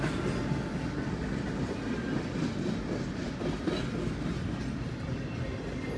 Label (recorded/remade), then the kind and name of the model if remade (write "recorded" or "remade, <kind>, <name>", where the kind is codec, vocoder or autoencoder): recorded